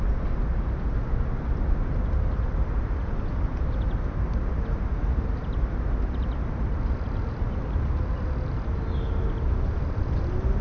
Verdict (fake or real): real